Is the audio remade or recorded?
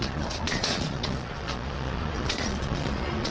remade